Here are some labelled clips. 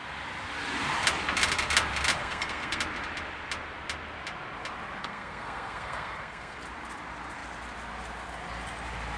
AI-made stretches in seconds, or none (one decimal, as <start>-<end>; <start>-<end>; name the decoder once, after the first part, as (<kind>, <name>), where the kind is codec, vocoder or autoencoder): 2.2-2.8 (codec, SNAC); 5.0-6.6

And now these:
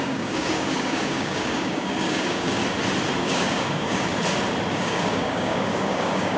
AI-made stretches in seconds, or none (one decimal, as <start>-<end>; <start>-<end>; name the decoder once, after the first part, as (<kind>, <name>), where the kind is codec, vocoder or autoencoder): 0.0-2.6 (codec, DAC); 3.2-4.1; 4.7-6.4

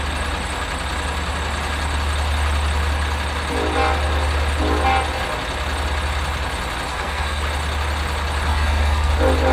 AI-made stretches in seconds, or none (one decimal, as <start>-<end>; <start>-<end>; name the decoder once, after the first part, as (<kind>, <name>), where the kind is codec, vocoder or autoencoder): 6.9-7.4 (codec, SNAC); 8.5-9.1

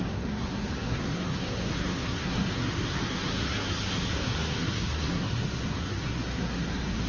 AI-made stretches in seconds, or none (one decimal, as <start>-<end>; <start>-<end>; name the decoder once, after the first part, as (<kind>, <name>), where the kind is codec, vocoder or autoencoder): 0.0-7.1 (codec, SNAC)